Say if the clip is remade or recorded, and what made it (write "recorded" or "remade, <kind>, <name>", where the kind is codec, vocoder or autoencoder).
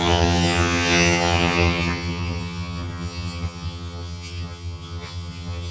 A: remade, vocoder, HiFi-GAN